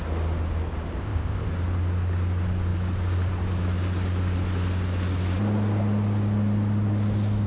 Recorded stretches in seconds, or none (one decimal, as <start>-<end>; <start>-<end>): 0.0-1.0; 1.5-7.5